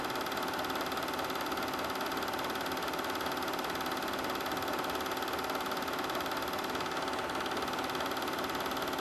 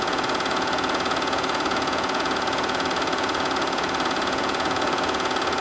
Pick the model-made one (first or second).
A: second